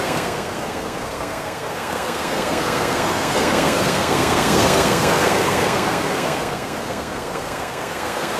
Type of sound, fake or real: fake